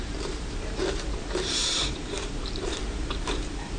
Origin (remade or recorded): remade